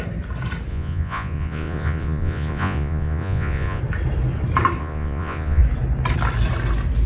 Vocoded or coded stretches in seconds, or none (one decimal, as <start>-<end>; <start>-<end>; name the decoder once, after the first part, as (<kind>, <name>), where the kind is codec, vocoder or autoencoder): 0.7-3.8 (vocoder, Vocos); 4.8-5.6